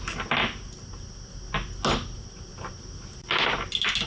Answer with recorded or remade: recorded